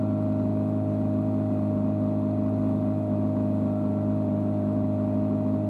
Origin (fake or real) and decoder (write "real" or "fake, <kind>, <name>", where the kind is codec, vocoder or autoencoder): real